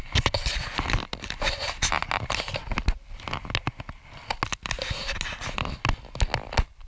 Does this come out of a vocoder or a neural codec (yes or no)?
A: no